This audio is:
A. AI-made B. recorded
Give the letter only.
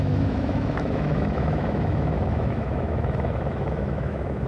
A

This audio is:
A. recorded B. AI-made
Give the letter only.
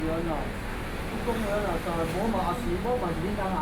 A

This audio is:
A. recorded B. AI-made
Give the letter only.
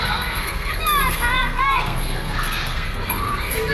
B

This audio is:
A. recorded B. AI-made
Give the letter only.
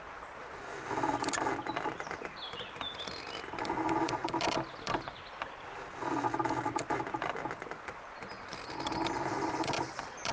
A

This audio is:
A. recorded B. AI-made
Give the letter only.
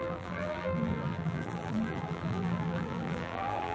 B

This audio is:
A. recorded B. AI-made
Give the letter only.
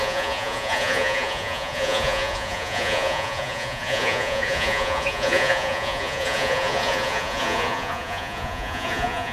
B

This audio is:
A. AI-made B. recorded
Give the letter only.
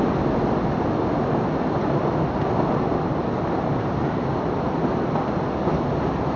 B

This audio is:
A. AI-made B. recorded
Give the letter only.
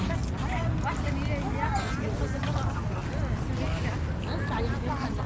B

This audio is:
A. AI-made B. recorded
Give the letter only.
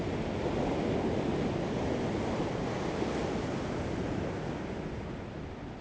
B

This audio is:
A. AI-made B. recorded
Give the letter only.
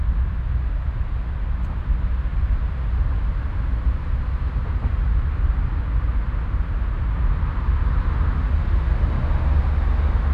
B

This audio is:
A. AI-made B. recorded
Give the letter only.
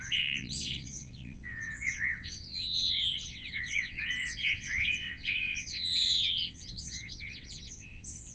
A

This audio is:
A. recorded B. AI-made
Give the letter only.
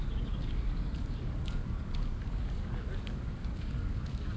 B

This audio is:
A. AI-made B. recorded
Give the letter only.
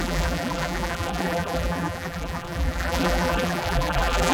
A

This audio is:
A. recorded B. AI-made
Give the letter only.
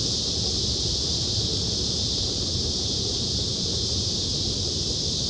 B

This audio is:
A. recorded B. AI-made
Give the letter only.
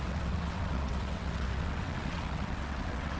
B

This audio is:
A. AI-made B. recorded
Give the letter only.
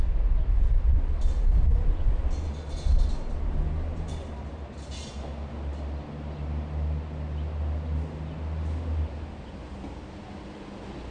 B